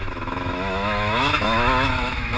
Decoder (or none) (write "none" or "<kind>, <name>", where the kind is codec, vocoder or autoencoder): autoencoder, DAC-VAE